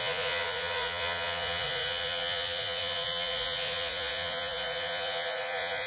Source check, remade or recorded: remade